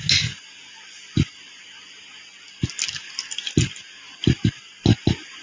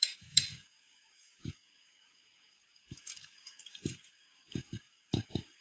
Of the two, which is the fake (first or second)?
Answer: second